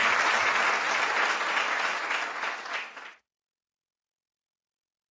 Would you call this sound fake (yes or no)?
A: no